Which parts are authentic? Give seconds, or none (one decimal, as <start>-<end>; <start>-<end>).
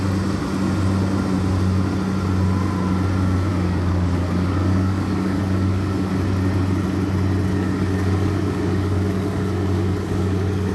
0.0-3.5; 6.1-7.5